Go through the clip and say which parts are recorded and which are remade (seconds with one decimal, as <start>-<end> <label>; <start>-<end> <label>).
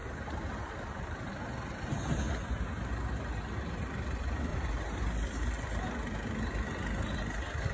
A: 0.0-0.7 remade; 0.7-4.5 recorded; 4.5-5.0 remade; 5.0-7.7 recorded